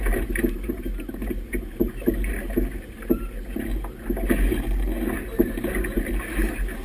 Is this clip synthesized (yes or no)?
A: no